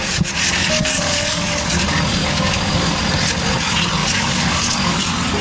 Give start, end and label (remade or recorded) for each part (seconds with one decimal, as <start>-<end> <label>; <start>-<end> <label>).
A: 0.0-0.6 recorded; 0.6-1.8 remade; 1.8-2.2 recorded; 2.2-3.0 remade; 3.0-4.0 recorded; 4.0-5.0 remade; 5.0-5.4 recorded